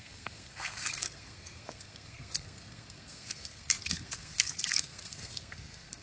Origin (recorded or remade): remade